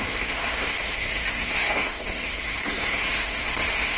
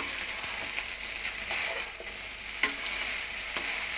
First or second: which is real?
second